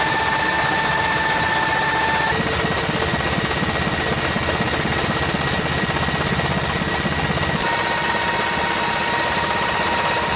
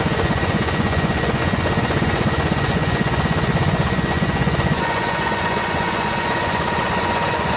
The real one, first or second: first